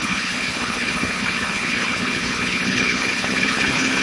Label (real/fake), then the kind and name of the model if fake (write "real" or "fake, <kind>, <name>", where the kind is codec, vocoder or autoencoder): fake, codec, HILCodec